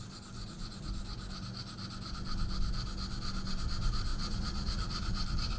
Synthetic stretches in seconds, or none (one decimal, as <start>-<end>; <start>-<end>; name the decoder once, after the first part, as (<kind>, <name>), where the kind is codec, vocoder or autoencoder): 0.4-0.9 (vocoder, Vocos); 4.1-5.6